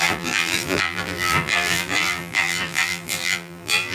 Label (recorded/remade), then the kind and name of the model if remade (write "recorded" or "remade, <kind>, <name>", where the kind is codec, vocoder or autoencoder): remade, vocoder, BigVGAN v2